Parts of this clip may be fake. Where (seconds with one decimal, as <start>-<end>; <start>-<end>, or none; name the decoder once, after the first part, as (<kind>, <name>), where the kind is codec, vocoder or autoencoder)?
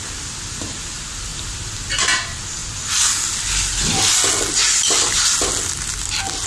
none